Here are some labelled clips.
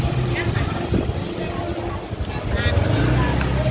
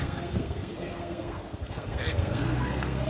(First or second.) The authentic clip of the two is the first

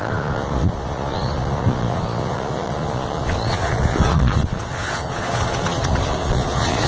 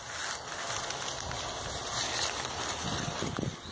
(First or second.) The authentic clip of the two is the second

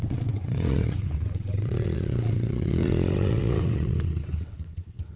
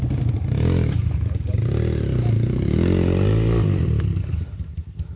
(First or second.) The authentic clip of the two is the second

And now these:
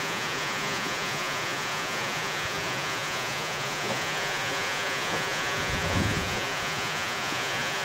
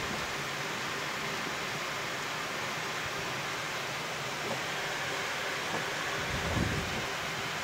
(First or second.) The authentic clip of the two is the second